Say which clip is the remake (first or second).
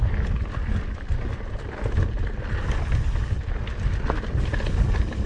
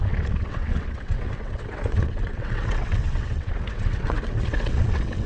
second